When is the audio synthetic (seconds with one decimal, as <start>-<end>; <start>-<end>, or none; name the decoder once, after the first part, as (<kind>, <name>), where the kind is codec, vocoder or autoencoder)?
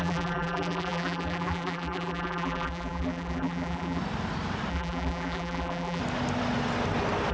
0.0-4.0 (vocoder, BigVGAN v2); 4.7-6.0